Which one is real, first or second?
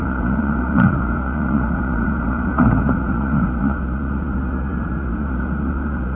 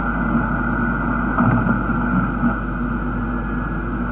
second